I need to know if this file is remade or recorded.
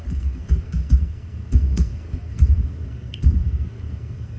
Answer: remade